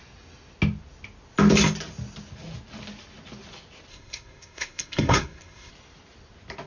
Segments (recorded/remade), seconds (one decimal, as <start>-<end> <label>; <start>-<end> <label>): 0.0-3.9 recorded; 3.9-5.7 remade; 5.7-6.7 recorded